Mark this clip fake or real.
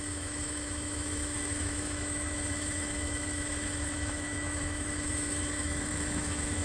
fake